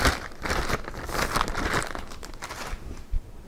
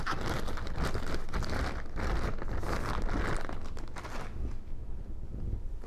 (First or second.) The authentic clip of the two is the second